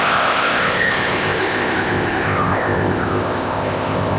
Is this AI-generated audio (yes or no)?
yes